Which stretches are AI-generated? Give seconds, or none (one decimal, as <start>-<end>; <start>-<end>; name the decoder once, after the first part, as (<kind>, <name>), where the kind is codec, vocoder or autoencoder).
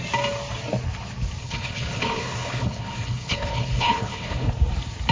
1.4-4.5 (codec, HILCodec)